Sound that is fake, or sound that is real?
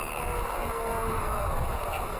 fake